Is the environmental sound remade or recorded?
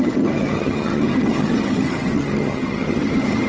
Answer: remade